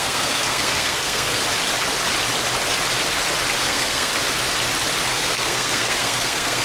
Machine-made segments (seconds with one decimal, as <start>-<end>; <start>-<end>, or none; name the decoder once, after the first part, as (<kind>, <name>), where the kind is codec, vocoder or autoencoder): 0.0-1.4 (codec, SNAC); 3.6-4.1; 5.1-6.6